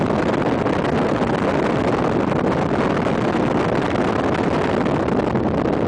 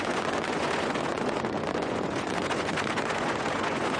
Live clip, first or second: first